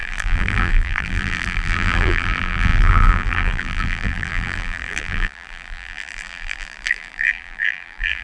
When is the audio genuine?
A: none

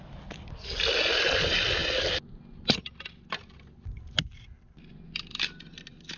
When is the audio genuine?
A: 0.0-6.2